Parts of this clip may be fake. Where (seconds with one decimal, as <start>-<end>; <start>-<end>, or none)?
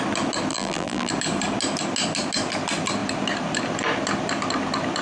0.5-1.1